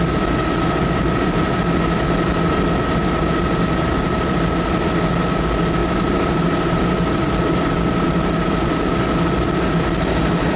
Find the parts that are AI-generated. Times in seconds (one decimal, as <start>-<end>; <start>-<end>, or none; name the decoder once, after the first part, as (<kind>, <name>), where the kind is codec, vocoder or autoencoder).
3.0-4.2 (vocoder, BigVGAN v2); 5.8-7.3